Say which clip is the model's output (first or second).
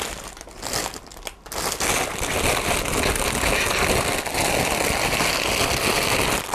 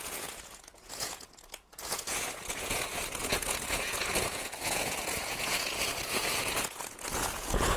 second